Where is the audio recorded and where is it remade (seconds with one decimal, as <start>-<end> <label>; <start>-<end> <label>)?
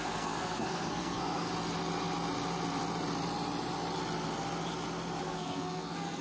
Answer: 0.0-1.5 remade; 1.5-5.2 recorded; 5.2-6.2 remade